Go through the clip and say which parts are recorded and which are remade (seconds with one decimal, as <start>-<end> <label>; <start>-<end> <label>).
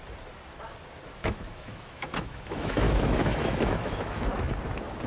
0.0-1.2 recorded; 1.2-4.3 remade; 4.3-5.1 recorded